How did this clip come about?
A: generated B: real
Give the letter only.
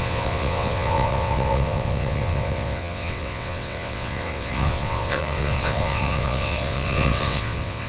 A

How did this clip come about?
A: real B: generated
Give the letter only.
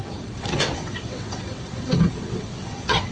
B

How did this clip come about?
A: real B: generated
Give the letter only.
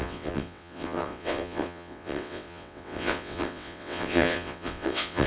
B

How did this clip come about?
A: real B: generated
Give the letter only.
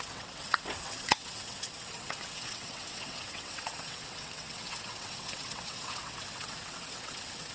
B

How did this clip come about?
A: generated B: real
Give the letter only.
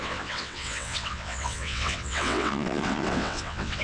A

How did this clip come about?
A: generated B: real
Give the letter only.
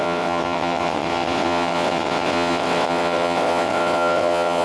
A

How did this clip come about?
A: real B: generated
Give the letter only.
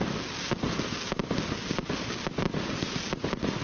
A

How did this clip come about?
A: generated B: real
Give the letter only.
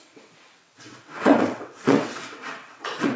A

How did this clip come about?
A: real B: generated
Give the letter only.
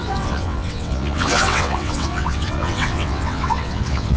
B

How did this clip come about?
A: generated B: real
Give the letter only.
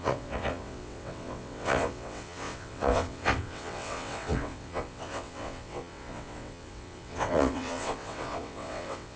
A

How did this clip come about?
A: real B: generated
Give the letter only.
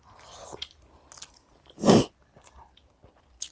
A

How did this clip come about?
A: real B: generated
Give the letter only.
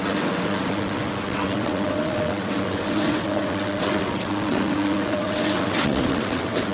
B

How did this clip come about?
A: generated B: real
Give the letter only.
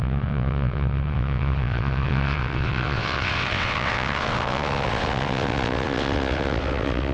A